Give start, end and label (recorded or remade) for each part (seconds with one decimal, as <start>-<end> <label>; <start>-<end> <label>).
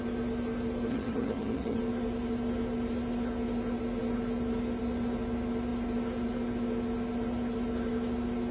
0.0-0.9 recorded; 0.9-1.8 remade; 1.8-8.5 recorded